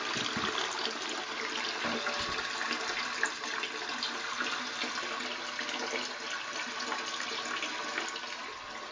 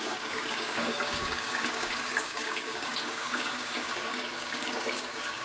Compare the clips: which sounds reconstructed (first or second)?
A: second